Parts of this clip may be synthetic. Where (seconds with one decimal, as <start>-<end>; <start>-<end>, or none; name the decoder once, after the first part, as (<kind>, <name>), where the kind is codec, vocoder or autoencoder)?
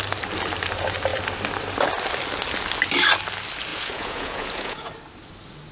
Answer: 3.7-4.9 (vocoder, Vocos)